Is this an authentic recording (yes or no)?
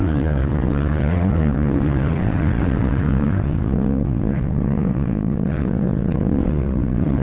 no